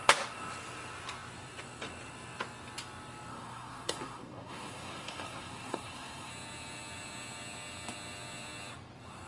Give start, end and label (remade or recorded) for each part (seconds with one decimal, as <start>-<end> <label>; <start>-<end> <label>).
0.0-3.3 recorded; 3.3-6.3 remade; 6.3-9.3 recorded